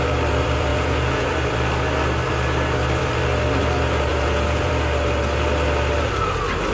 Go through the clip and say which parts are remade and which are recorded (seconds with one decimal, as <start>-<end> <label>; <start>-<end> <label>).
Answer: 0.0-0.7 recorded; 0.7-1.3 remade; 1.3-4.1 recorded; 4.1-4.7 remade; 4.7-6.7 recorded